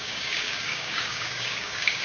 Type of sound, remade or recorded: remade